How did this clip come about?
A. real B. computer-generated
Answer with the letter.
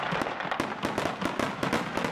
A